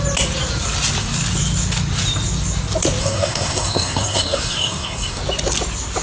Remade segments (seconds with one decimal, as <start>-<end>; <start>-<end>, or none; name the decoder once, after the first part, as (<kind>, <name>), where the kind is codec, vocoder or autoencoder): 3.0-5.2 (codec, SNAC)